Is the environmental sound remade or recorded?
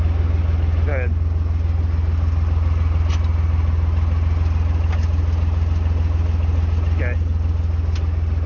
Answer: recorded